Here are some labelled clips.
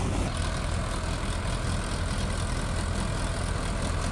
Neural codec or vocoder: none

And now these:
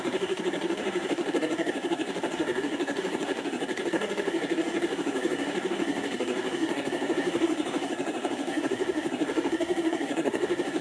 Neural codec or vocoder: codec, SNAC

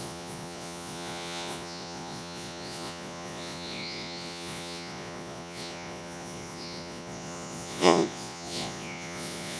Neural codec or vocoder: vocoder, Vocos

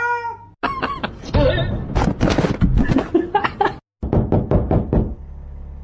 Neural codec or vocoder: none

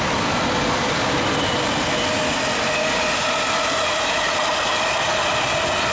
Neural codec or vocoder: none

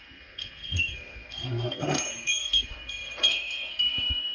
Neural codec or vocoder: codec, SNAC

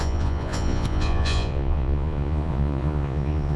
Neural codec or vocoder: vocoder, Vocos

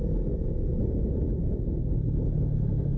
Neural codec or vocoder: none